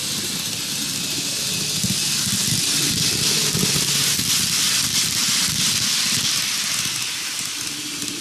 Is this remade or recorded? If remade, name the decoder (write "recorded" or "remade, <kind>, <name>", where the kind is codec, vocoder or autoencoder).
recorded